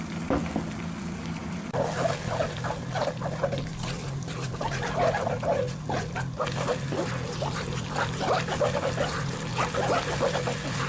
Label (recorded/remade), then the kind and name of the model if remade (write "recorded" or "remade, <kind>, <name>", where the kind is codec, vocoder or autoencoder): recorded